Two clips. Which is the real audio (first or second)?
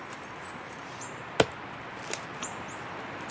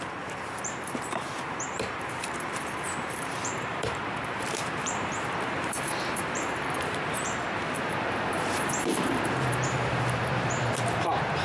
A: first